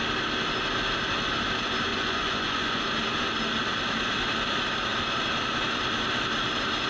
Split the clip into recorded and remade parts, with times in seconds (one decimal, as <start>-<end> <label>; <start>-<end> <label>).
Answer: 0.0-1.9 recorded; 1.9-2.8 remade; 2.8-6.9 recorded

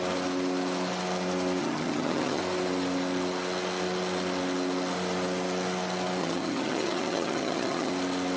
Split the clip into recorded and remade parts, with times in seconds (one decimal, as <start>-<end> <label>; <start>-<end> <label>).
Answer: 0.0-1.6 recorded; 1.6-2.4 remade; 2.4-6.2 recorded; 6.2-7.9 remade; 7.9-8.4 recorded

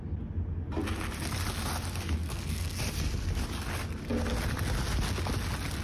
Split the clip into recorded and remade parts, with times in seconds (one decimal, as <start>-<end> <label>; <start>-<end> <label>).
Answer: 0.0-2.2 recorded; 2.2-2.8 remade; 2.8-5.8 recorded

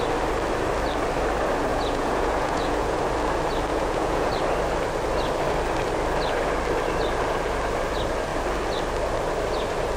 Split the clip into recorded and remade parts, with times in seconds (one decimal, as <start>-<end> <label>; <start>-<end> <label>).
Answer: 0.0-1.7 recorded; 1.7-3.0 remade; 3.0-3.7 recorded; 3.7-4.3 remade; 4.3-10.0 recorded

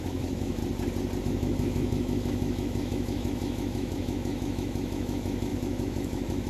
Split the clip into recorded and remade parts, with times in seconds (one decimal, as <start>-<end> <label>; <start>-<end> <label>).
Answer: 0.0-0.6 remade; 0.6-1.2 recorded; 1.2-6.5 remade

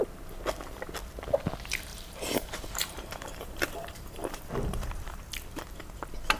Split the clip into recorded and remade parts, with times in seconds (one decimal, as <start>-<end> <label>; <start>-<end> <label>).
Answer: 0.0-1.9 recorded; 1.9-5.3 remade; 5.3-6.4 recorded

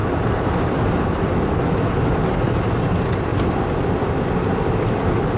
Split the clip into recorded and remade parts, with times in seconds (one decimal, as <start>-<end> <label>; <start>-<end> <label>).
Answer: 0.0-1.3 remade; 1.3-5.4 recorded